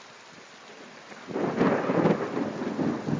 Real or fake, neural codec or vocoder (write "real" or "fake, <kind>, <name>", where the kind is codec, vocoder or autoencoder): real